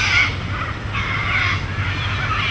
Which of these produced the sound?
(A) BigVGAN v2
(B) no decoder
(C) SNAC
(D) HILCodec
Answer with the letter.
B